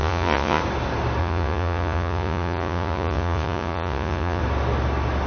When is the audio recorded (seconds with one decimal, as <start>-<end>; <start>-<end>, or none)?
0.6-1.2; 4.4-5.3